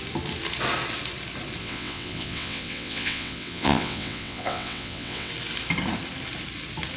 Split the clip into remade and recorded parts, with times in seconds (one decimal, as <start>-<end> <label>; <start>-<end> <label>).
0.0-1.6 recorded; 1.6-5.3 remade; 5.3-7.0 recorded